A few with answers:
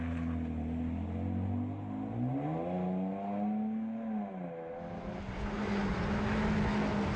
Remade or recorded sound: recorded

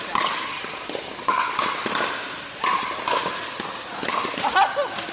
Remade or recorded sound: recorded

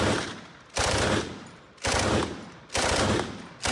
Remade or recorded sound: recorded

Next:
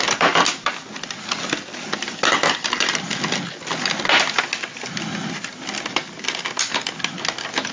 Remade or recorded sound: recorded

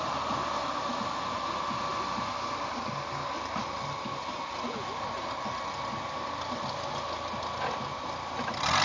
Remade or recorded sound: recorded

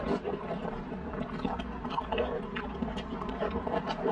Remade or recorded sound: recorded